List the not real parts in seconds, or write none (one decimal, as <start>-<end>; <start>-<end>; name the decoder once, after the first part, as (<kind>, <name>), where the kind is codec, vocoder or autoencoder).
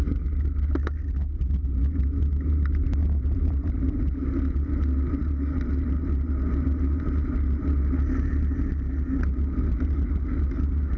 3.0-4.0 (vocoder, BigVGAN v2)